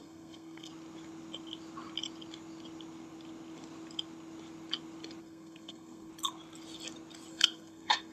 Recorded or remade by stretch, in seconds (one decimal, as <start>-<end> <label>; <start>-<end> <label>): 0.0-0.7 remade; 0.7-5.2 recorded; 5.2-6.1 remade; 6.1-7.3 recorded; 7.3-8.1 remade

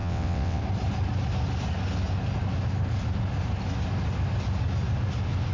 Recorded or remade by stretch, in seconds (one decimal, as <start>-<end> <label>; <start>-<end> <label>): 0.0-0.6 remade; 0.6-5.5 recorded

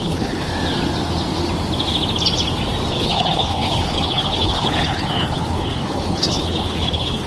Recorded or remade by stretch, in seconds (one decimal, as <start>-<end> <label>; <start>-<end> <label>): 0.0-0.5 remade; 0.5-2.9 recorded; 2.9-7.3 remade

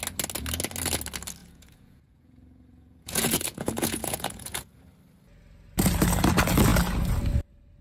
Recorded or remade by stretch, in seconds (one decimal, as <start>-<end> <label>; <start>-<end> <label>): 0.0-1.4 recorded; 1.4-4.8 remade; 4.8-7.8 recorded

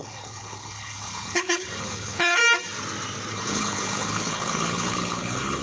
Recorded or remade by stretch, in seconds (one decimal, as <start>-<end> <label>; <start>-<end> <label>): 0.0-2.4 remade; 2.4-3.3 recorded; 3.3-5.6 remade

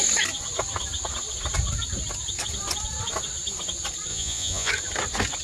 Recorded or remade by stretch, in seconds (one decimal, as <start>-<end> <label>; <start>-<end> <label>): 0.0-4.1 recorded; 4.1-4.7 remade; 4.7-5.4 recorded

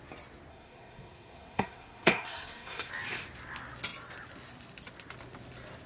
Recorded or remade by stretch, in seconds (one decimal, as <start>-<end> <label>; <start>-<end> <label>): 0.0-0.5 recorded; 0.5-2.9 remade; 2.9-5.9 recorded

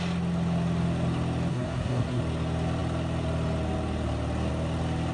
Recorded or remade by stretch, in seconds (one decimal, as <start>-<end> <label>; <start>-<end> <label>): 0.0-1.5 recorded; 1.5-2.2 remade; 2.2-5.1 recorded